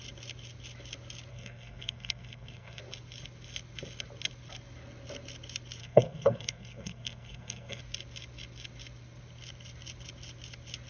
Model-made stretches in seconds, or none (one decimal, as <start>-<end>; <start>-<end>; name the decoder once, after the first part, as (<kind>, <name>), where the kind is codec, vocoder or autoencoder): 1.3-2.8 (codec, SNAC); 5.8-7.8